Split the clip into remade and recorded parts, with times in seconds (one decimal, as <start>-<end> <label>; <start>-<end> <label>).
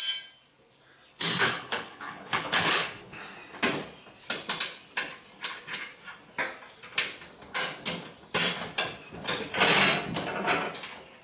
0.0-1.1 recorded; 1.1-3.2 remade; 3.2-11.2 recorded